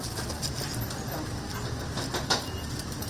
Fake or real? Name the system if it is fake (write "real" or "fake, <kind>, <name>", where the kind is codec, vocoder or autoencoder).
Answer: real